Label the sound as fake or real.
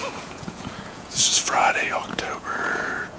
fake